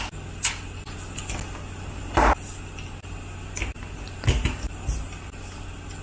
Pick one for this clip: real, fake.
real